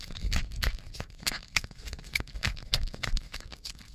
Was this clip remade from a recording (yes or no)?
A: yes